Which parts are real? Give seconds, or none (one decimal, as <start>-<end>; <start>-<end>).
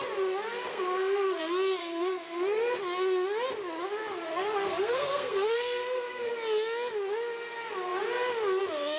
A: 0.0-0.7; 1.4-1.8; 2.8-4.3; 6.3-9.0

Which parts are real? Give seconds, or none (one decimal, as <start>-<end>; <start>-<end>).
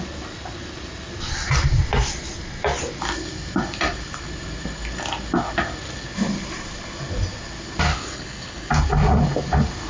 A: 0.0-7.9; 8.7-9.9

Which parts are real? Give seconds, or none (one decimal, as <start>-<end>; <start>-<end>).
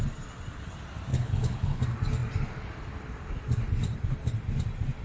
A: 0.0-1.1; 1.8-5.0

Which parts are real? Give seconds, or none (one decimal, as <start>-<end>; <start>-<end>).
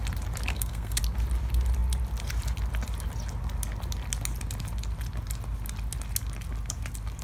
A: 0.0-0.5; 1.0-7.2